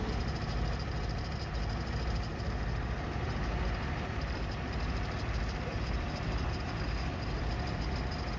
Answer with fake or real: fake